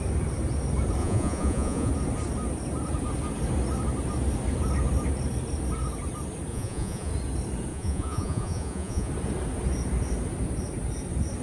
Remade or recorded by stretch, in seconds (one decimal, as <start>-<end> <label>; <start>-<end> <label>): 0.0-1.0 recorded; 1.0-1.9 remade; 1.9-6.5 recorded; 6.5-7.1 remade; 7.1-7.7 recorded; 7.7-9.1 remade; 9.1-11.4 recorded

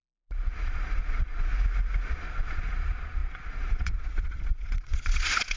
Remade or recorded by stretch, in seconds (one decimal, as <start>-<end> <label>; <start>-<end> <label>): 0.0-1.5 remade; 1.5-2.1 recorded; 2.1-5.6 remade

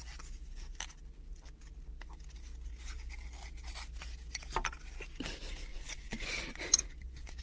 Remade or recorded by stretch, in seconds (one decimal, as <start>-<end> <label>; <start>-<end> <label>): 0.0-5.7 recorded; 5.7-7.4 remade

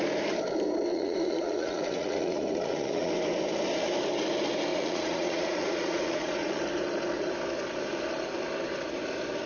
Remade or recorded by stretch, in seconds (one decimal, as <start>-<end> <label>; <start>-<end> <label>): 0.0-0.9 recorded; 0.9-3.1 remade; 3.1-4.7 recorded; 4.7-6.6 remade; 6.6-9.5 recorded

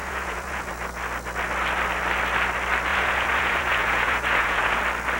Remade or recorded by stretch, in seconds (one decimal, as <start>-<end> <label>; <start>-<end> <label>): 0.0-0.7 remade; 0.7-2.9 recorded; 2.9-4.8 remade; 4.8-5.2 recorded